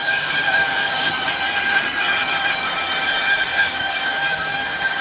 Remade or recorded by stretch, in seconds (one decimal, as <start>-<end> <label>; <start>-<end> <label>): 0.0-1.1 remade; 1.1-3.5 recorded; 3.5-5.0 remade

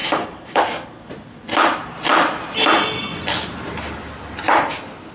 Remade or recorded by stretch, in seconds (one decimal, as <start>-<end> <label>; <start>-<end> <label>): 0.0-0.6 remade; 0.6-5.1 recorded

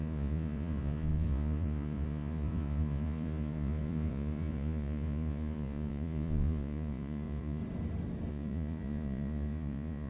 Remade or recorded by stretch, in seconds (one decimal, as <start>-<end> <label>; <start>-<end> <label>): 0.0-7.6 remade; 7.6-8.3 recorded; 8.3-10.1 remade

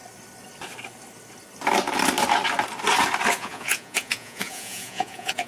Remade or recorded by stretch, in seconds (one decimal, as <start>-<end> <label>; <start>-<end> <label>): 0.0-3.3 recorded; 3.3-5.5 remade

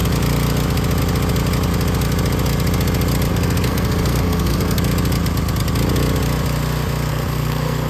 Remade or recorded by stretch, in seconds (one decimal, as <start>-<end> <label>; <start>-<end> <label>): 0.0-3.3 recorded; 3.3-4.8 remade; 4.8-7.1 recorded; 7.1-7.9 remade

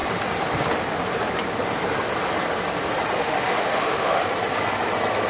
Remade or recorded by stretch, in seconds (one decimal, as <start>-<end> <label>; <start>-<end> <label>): 0.0-3.2 recorded; 3.2-4.2 remade; 4.2-5.3 recorded